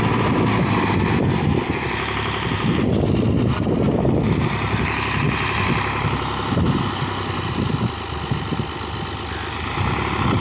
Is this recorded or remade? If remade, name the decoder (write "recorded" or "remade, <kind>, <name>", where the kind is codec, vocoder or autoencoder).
recorded